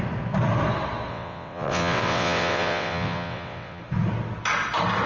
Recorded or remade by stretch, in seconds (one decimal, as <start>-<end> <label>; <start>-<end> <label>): 0.0-1.1 recorded; 1.1-3.8 remade; 3.8-5.1 recorded